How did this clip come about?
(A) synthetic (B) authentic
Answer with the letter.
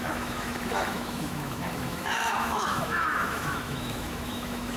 A